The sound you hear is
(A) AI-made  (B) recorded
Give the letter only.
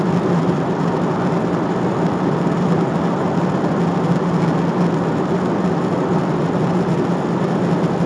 B